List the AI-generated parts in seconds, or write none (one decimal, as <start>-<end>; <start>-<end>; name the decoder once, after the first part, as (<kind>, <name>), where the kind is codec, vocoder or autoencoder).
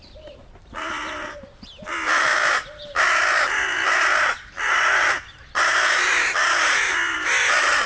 0.0-4.1 (vocoder, BigVGAN v2); 5.1-5.7; 6.9-7.9